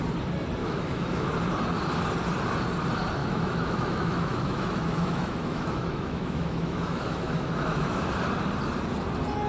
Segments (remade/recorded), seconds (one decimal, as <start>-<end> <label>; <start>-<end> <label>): 0.0-0.6 recorded; 0.6-1.3 remade; 1.3-3.2 recorded; 3.2-8.1 remade; 8.1-9.5 recorded